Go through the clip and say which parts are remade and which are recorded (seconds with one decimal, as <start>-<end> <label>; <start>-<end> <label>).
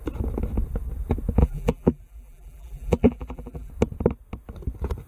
0.0-1.4 recorded; 1.4-3.7 remade; 3.7-5.1 recorded